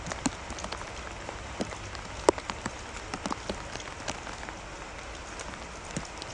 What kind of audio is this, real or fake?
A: real